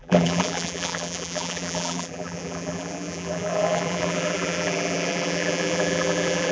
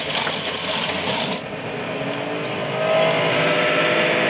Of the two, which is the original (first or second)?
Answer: second